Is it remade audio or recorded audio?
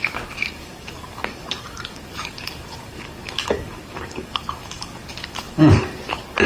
remade